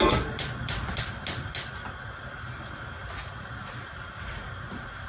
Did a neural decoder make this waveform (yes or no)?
no